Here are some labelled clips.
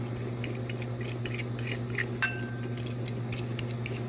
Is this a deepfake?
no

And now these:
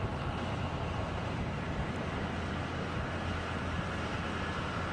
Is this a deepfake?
no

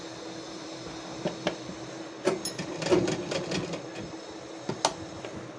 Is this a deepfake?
no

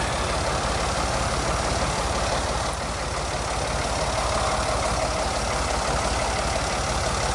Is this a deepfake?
no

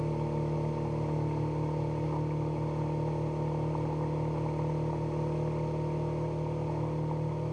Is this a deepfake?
no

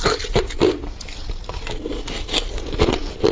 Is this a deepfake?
no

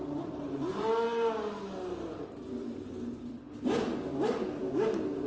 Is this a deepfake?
no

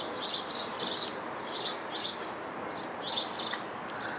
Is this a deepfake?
no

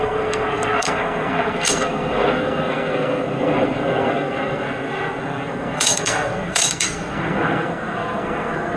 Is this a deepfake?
yes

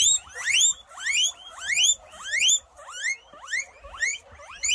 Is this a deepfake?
no